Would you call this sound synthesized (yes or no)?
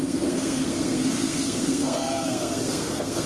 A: yes